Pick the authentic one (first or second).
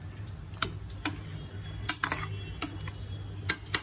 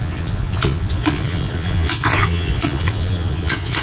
first